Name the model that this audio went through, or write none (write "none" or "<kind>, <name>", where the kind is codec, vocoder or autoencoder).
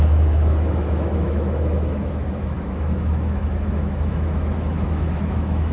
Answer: autoencoder, DAC-VAE